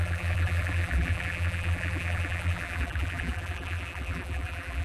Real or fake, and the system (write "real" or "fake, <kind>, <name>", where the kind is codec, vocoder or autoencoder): fake, vocoder, BigVGAN v2